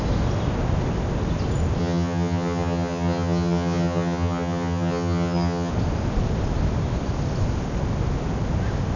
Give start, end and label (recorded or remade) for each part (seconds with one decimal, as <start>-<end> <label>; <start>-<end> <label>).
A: 0.0-1.8 recorded; 1.8-5.7 remade; 5.7-9.0 recorded